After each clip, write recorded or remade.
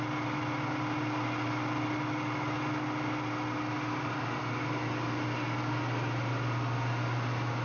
recorded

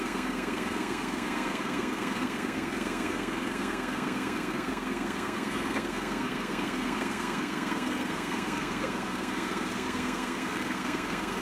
remade